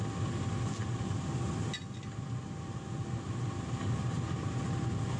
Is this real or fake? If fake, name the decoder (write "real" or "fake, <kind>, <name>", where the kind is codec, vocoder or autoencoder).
real